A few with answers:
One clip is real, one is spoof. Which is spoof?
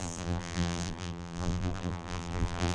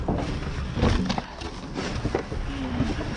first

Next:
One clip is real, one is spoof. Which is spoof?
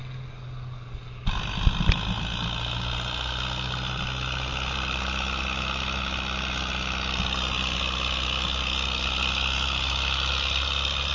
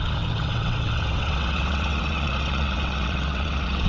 second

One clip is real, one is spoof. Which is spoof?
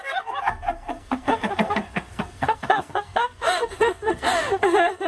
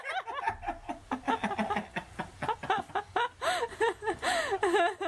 first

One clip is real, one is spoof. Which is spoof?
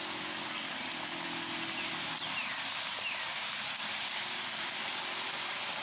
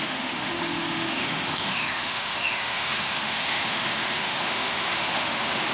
second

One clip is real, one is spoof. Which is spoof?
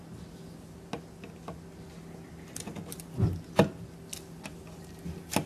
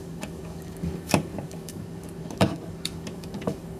second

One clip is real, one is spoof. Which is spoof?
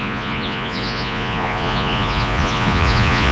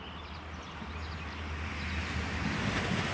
first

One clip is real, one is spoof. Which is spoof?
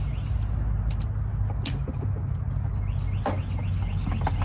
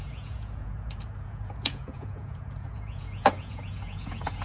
second